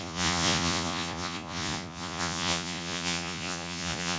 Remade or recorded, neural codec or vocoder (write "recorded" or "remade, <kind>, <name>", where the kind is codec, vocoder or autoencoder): remade, vocoder, Vocos